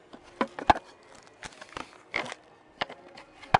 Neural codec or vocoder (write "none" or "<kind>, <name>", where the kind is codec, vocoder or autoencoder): none